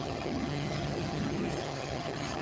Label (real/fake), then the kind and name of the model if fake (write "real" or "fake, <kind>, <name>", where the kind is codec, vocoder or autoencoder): fake, vocoder, HiFi-GAN